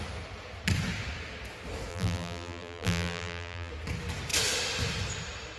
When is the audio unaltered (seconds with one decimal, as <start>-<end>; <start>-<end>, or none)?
0.0-1.9; 3.7-5.6